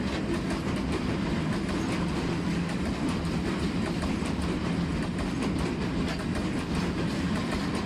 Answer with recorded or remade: recorded